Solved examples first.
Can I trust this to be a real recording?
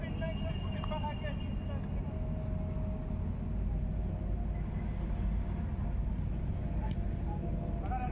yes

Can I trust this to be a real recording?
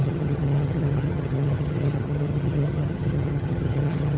no